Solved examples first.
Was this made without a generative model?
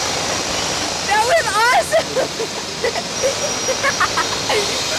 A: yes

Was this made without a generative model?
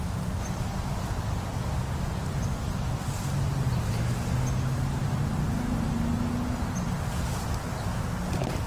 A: yes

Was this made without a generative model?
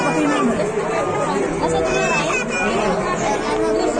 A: yes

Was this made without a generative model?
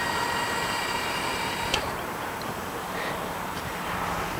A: no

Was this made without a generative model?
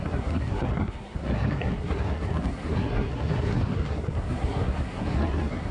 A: no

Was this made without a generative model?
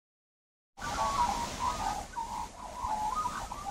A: yes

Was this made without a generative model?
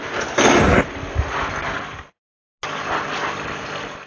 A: yes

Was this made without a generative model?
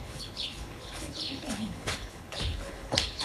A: no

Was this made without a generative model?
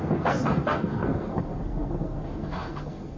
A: no